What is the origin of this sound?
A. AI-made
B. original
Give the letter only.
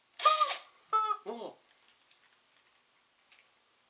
B